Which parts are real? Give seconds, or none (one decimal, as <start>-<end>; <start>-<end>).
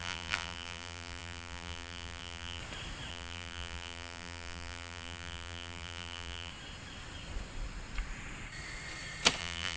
2.6-3.1; 6.5-9.4